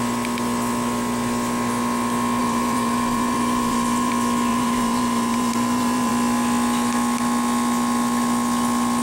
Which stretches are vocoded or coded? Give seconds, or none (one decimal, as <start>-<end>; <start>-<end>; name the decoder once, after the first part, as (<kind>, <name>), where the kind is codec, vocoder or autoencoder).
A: 2.4-4.1 (vocoder, BigVGAN v2); 4.5-6.1